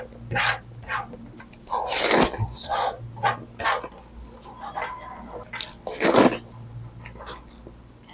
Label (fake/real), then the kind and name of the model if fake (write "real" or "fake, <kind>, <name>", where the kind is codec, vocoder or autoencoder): real